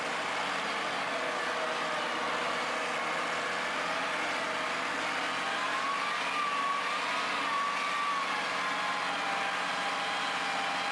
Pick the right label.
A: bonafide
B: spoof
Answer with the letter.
A